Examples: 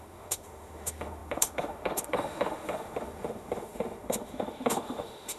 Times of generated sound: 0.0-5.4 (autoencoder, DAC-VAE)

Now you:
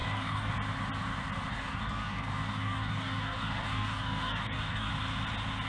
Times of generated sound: 0.0-0.5 (codec, DAC); 1.5-4.9

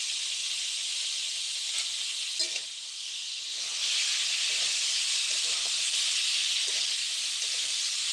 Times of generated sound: none

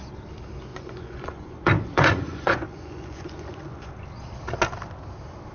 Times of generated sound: 0.7-3.9 (vocoder, Vocos)

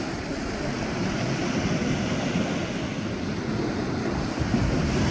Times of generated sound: none

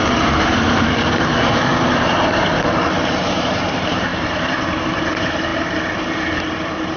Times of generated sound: 0.0-1.7 (vocoder, BigVGAN v2); 2.6-7.0

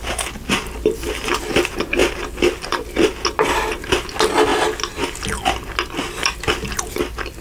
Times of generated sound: none

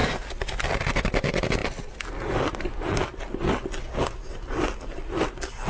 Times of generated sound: none